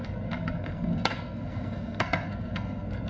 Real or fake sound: fake